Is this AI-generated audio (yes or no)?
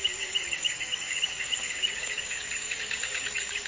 yes